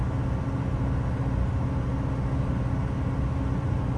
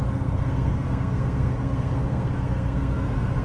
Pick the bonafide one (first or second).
first